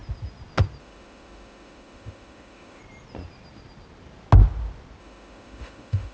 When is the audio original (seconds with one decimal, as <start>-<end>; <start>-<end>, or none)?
0.0-0.8; 2.8-5.0